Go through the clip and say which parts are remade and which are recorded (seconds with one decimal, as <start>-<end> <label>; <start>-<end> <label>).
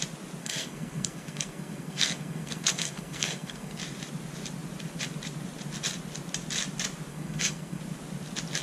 0.0-0.4 recorded; 0.4-3.8 remade; 3.8-7.1 recorded; 7.1-7.8 remade; 7.8-8.6 recorded